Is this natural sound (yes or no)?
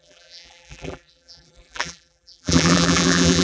no